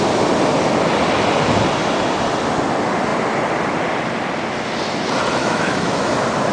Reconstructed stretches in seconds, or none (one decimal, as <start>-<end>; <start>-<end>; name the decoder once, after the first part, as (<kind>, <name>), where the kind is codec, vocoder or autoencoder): 5.4-6.1 (autoencoder, DAC-VAE)